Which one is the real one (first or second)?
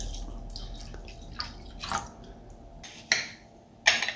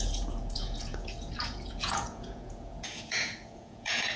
first